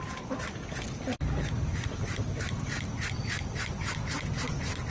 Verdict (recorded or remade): recorded